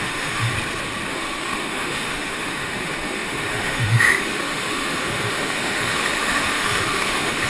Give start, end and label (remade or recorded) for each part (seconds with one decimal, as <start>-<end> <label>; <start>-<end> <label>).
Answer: 0.0-0.5 remade; 0.5-1.1 recorded; 1.1-7.5 remade